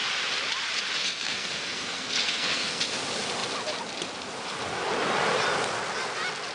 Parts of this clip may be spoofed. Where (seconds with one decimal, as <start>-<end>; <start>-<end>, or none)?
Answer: 1.0-2.8